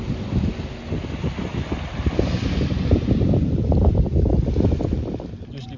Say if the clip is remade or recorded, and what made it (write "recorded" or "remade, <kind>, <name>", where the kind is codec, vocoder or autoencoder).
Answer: recorded